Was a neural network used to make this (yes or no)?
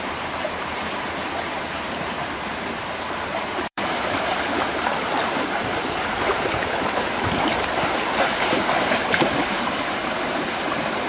yes